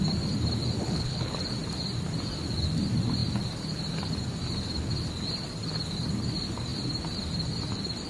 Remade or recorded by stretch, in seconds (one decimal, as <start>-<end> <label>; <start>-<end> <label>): 0.0-0.8 recorded; 0.8-1.4 remade; 1.4-8.1 recorded